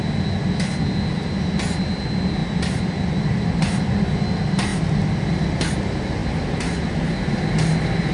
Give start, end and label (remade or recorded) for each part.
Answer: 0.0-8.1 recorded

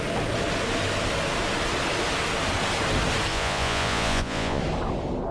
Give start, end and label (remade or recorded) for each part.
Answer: 0.0-3.3 recorded; 3.3-4.6 remade; 4.6-5.3 recorded

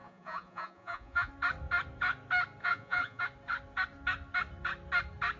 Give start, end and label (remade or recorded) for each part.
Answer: 0.0-1.3 remade; 1.3-2.6 recorded; 2.6-3.2 remade; 3.2-5.4 recorded

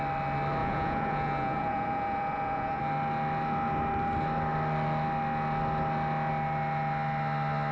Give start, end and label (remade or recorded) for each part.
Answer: 0.0-0.6 recorded; 0.6-2.8 remade; 2.8-7.7 recorded